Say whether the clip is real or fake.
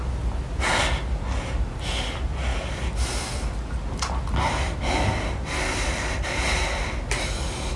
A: real